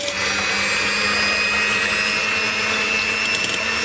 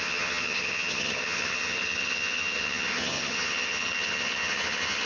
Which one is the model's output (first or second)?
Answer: second